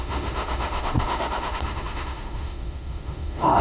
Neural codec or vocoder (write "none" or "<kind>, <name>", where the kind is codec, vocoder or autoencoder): autoencoder, DAC-VAE